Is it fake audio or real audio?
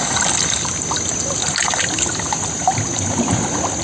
real